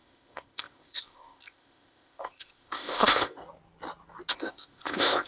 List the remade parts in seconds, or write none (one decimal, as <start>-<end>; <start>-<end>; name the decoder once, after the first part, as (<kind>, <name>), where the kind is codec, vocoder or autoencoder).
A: 0.0-3.4 (codec, ZipCodec); 4.3-5.3